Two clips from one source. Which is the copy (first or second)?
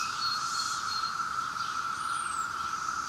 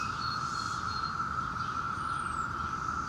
first